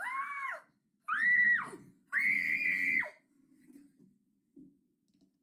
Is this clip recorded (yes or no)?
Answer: yes